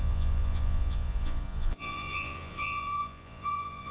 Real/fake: fake